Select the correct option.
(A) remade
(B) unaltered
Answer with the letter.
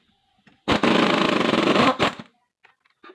B